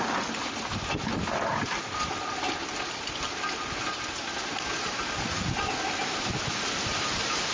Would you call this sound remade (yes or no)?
no